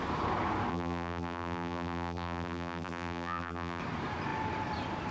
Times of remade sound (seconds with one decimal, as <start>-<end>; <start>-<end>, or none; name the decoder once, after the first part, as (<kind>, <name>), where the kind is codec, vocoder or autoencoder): 0.7-3.8 (vocoder, BigVGAN v2)